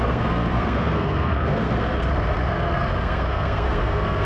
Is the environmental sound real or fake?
fake